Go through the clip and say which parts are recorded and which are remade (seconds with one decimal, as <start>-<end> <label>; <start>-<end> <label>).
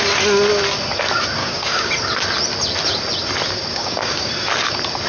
0.0-1.4 recorded; 1.4-1.9 remade; 1.9-3.7 recorded; 3.7-4.3 remade; 4.3-5.1 recorded